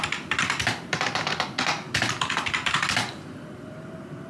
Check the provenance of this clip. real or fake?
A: fake